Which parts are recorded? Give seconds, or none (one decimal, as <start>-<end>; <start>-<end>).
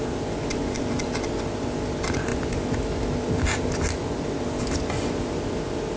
0.0-6.0